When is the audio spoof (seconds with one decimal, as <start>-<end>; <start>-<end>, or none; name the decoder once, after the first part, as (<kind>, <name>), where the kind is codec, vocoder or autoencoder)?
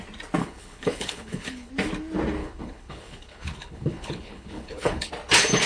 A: 0.4-1.7 (codec, HILCodec); 2.4-5.1